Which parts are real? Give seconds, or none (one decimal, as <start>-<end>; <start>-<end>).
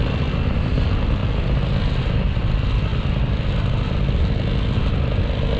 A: 0.0-5.6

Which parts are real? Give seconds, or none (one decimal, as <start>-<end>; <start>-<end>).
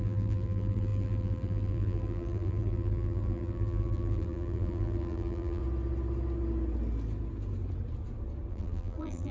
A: 5.6-8.5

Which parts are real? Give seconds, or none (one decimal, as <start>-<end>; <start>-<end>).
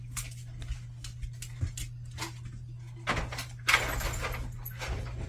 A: 0.0-5.3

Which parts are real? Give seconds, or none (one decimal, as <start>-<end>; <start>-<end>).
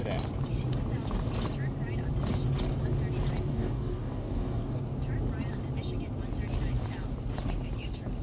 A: 0.0-3.5; 4.8-8.2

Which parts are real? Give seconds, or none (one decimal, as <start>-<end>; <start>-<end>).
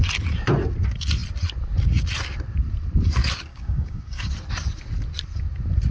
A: 0.0-3.5; 4.3-5.9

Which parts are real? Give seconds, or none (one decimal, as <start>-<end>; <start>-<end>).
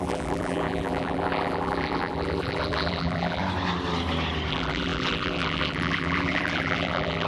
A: 3.4-4.5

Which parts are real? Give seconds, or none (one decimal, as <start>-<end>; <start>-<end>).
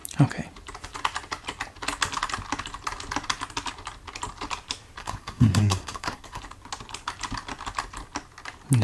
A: 0.0-5.0; 6.4-8.8